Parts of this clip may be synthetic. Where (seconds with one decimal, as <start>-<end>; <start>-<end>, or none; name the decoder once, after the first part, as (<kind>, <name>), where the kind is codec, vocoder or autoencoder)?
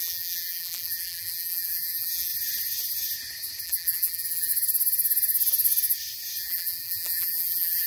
0.0-2.3 (vocoder, BigVGAN v2); 3.6-4.5; 6.4-7.9